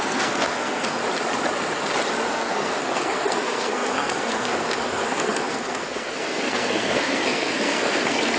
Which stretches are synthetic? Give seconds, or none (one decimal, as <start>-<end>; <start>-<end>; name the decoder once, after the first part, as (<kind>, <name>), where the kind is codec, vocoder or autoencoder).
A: 0.0-1.0 (codec, SNAC); 2.3-8.4